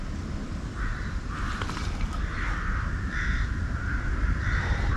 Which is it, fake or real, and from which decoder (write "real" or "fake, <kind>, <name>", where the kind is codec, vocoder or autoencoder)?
real